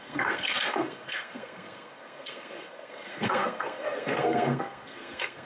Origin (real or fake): fake